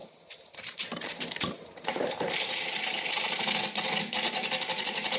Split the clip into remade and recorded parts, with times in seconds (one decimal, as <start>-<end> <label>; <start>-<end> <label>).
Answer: 0.0-2.5 remade; 2.5-5.2 recorded